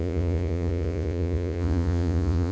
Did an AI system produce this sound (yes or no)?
yes